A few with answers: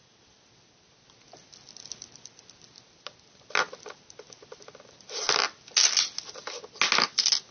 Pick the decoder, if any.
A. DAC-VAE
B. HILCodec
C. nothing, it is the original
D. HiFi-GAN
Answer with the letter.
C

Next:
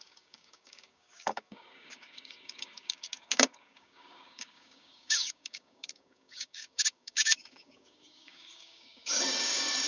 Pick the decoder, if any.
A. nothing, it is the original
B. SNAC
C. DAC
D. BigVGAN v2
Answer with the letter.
C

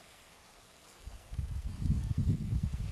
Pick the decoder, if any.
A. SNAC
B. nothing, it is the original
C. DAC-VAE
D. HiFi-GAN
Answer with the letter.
A